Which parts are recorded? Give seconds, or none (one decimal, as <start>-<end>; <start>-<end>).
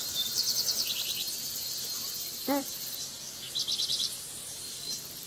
3.1-3.9